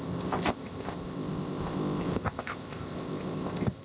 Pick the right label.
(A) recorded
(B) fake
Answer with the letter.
B